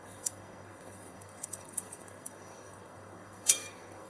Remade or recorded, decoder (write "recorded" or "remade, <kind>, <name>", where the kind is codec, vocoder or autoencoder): remade, codec, SNAC